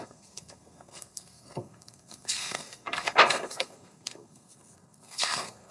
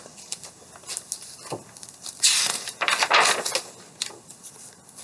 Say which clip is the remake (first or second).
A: first